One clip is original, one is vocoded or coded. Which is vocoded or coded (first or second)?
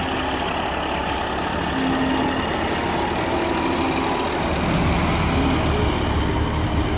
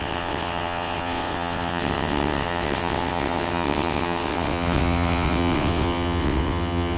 second